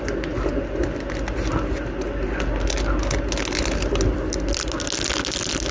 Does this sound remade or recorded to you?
recorded